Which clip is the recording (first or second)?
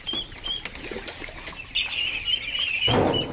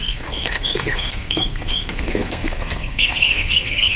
first